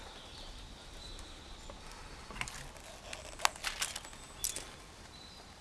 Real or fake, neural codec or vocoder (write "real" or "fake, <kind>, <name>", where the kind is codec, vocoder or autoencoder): real